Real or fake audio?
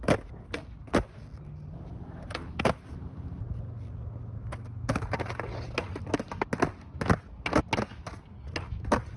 real